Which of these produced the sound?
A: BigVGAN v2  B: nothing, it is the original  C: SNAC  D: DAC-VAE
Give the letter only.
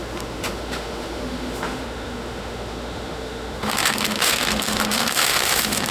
D